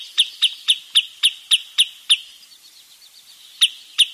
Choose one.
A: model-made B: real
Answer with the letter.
B